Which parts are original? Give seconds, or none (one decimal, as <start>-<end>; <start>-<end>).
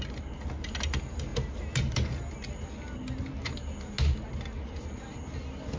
0.0-5.8